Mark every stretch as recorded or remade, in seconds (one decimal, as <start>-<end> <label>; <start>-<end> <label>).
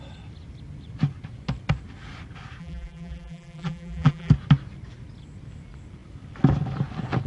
0.0-2.6 recorded; 2.6-4.3 remade; 4.3-7.3 recorded